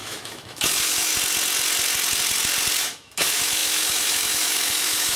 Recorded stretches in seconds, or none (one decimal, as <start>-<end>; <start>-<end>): 1.1-2.8